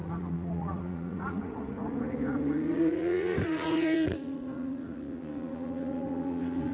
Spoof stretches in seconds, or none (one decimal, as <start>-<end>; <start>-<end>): 0.0-6.7